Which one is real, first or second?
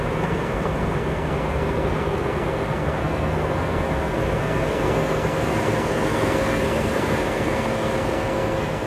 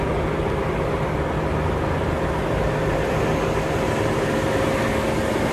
second